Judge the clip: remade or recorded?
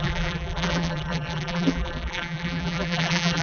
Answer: remade